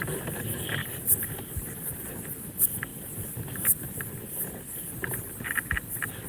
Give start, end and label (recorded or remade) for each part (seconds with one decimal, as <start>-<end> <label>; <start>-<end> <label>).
0.0-0.8 recorded; 0.8-2.1 remade; 2.1-2.9 recorded; 2.9-5.3 remade; 5.3-6.3 recorded